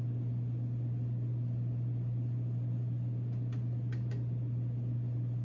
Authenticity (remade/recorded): recorded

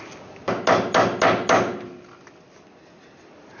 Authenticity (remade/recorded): recorded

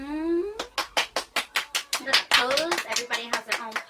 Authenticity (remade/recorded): recorded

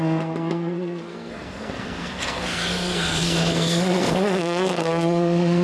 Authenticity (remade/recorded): remade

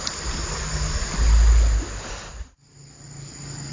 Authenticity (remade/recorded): recorded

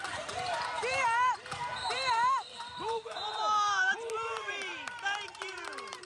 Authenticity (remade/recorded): remade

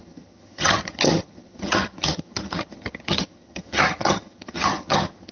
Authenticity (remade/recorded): remade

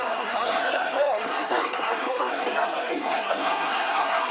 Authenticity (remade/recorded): remade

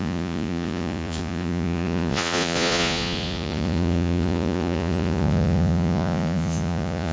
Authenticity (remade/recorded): remade